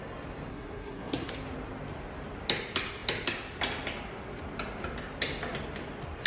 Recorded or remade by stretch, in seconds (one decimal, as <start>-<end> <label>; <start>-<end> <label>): 0.0-0.5 recorded; 0.5-1.3 remade; 1.3-6.3 recorded